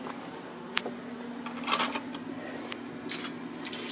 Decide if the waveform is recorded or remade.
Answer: recorded